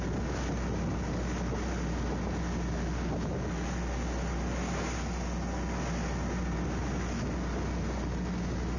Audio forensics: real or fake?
real